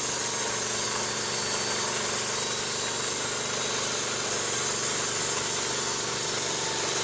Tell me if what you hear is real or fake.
real